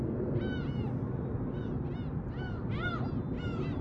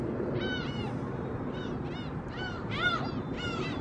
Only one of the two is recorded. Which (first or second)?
first